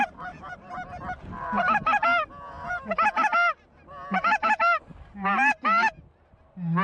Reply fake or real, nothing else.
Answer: real